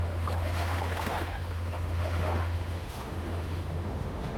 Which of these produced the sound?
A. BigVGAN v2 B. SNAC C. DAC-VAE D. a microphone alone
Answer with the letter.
C